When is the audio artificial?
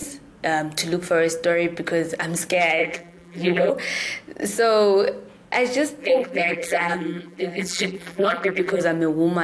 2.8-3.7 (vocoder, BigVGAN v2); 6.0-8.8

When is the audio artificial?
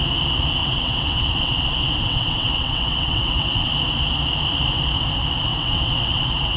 0.6-3.7 (vocoder, WaveNeXt); 5.5-6.6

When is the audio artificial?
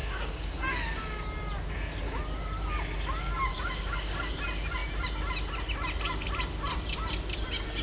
0.0-1.2 (codec, DAC); 3.5-4.3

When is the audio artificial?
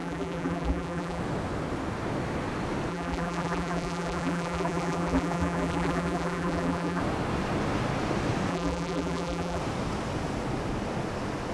0.0-1.2 (vocoder, BigVGAN v2); 2.9-7.0; 8.5-9.6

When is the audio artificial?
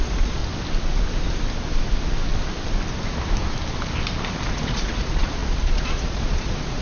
0.0-0.4 (vocoder, Vocos); 4.5-6.8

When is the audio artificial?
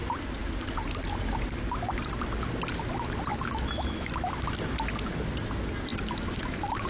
3.3-4.1 (autoencoder, DAC-VAE); 5.9-6.9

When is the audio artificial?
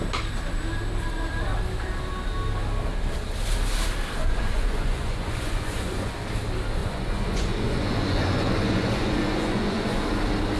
4.2-6.1 (vocoder, Vocos); 6.8-10.0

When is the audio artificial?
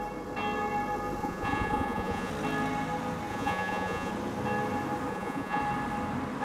1.2-2.3 (vocoder, Vocos); 3.3-4.1; 5.1-5.6